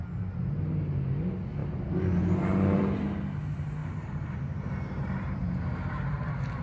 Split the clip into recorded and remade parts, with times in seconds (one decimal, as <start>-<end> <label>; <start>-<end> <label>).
0.0-3.8 recorded; 3.8-6.0 remade; 6.0-6.6 recorded